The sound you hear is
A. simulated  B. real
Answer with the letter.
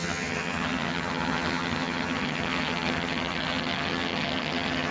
A